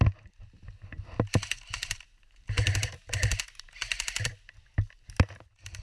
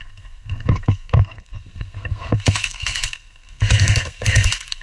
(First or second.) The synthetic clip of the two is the second